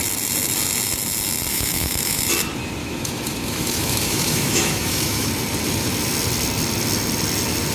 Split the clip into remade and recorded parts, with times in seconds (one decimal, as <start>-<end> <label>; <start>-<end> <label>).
0.0-1.5 recorded; 1.5-2.2 remade; 2.2-2.8 recorded; 2.8-5.3 remade; 5.3-7.7 recorded